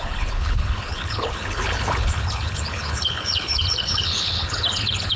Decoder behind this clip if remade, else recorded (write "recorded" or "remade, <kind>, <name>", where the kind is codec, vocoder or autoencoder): remade, codec, HILCodec